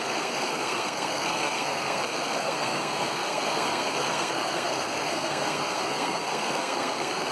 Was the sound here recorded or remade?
remade